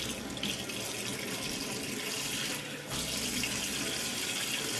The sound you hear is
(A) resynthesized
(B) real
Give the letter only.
B